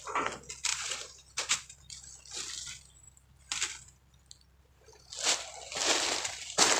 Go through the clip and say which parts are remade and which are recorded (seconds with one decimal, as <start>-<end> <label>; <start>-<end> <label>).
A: 0.0-0.7 recorded; 0.7-1.8 remade; 1.8-6.8 recorded